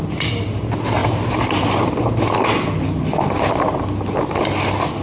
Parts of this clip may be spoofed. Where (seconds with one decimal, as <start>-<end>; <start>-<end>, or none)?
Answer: none